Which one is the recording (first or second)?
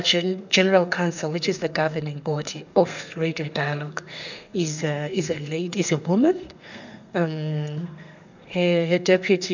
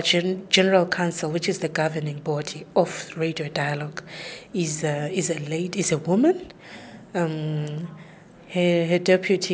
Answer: second